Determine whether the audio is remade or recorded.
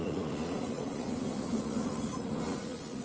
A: remade